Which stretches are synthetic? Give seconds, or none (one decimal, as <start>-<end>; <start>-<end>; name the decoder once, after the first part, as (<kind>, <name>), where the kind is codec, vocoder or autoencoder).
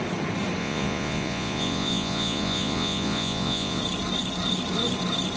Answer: 0.6-3.8 (vocoder, Vocos)